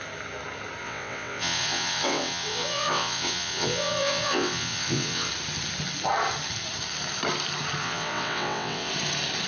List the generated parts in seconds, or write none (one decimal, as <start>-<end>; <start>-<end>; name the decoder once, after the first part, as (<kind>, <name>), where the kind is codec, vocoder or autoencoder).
0.8-5.3 (vocoder, WaveNeXt); 7.8-8.9